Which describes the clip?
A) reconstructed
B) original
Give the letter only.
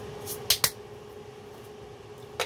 B